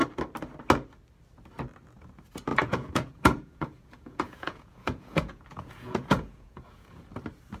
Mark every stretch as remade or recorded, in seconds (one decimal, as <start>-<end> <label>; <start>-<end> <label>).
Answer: 0.0-2.5 recorded; 2.5-7.1 remade; 7.1-7.6 recorded

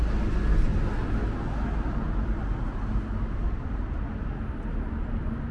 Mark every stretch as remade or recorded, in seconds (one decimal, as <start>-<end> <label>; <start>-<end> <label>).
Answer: 0.0-5.5 recorded

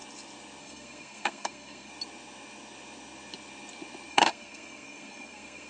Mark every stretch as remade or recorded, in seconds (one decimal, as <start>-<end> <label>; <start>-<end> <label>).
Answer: 0.0-0.6 recorded; 0.6-1.9 remade; 1.9-4.1 recorded; 4.1-5.7 remade

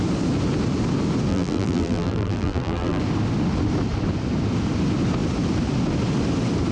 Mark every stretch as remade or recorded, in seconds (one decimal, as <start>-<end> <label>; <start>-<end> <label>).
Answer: 0.0-1.3 recorded; 1.3-3.0 remade; 3.0-6.7 recorded